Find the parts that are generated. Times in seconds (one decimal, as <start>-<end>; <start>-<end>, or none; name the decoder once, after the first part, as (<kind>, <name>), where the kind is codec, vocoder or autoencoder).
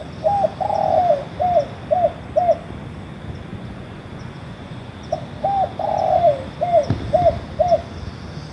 3.5-4.9 (vocoder, Vocos)